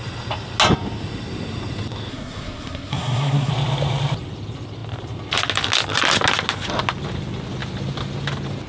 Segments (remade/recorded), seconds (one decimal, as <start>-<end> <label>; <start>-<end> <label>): 0.0-2.1 recorded; 2.1-3.5 remade; 3.5-8.7 recorded